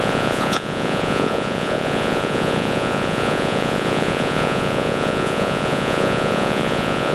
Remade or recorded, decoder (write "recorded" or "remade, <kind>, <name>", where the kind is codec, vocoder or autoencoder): remade, vocoder, Vocos